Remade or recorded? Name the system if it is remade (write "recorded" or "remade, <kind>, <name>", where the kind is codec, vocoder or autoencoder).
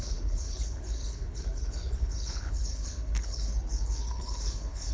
remade, codec, HILCodec